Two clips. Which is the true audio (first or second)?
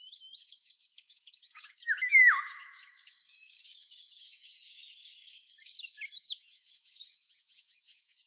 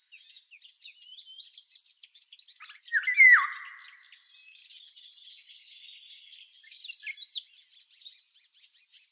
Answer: second